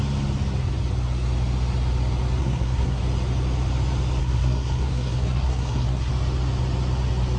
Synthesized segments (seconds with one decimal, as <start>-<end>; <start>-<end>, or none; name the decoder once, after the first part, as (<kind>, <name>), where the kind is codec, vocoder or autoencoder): 2.4-3.0 (codec, SNAC); 4.2-6.1